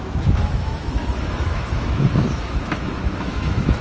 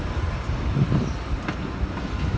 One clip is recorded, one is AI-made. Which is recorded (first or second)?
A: second